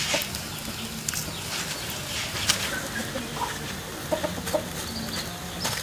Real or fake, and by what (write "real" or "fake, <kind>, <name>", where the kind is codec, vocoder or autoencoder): real